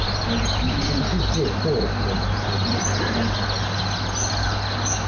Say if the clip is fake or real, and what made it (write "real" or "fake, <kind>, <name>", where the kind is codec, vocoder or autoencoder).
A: real